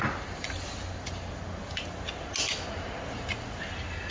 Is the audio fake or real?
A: real